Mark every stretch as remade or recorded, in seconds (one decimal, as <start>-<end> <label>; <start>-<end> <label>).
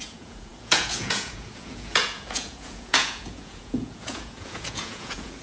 0.0-5.4 remade